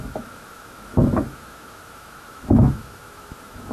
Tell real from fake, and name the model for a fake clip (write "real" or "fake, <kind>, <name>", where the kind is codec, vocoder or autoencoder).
fake, autoencoder, DAC-VAE